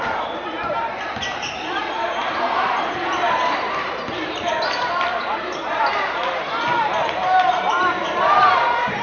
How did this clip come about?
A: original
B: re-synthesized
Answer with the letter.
B